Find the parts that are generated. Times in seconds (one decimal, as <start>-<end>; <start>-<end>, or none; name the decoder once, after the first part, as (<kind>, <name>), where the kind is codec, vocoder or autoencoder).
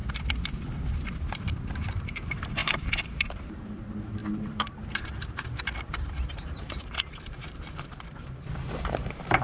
1.1-9.4 (vocoder, BigVGAN v2)